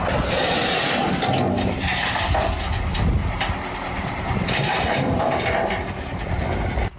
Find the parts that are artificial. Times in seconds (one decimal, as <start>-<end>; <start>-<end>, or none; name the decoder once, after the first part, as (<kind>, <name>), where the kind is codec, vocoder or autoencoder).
3.2-6.6 (vocoder, BigVGAN v2)